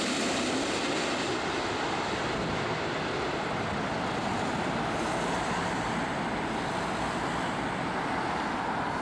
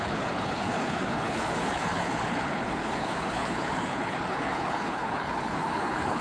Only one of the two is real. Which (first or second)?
first